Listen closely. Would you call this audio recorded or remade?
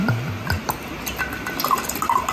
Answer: recorded